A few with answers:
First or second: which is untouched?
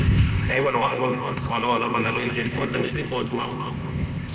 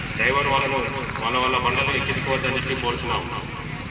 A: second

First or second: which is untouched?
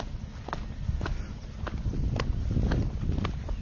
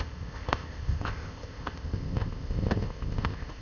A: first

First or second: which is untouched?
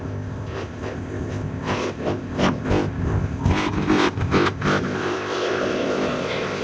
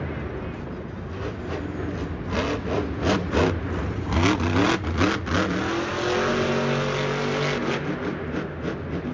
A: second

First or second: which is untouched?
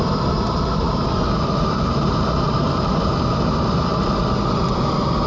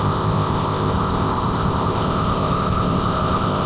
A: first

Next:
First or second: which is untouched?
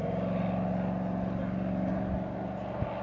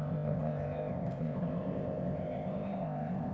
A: first